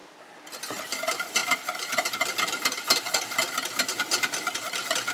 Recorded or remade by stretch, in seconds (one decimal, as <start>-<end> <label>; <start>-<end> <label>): 0.0-5.1 recorded

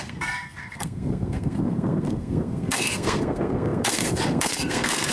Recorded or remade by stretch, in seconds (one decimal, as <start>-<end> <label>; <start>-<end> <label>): 0.0-5.1 remade

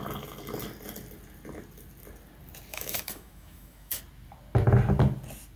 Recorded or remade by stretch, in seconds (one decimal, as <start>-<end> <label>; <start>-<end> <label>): 0.0-2.7 recorded; 2.7-4.0 remade; 4.0-5.6 recorded

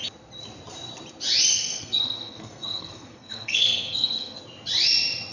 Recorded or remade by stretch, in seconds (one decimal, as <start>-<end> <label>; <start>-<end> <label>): 0.0-1.5 recorded; 1.5-4.4 remade; 4.4-5.3 recorded